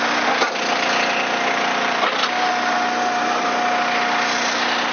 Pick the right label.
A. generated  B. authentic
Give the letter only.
B